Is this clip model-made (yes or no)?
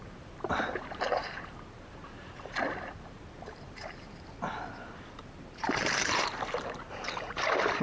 yes